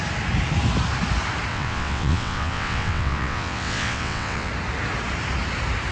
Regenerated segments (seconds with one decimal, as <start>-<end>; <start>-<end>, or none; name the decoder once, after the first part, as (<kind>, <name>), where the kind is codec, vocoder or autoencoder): 1.5-4.5 (vocoder, WaveNeXt)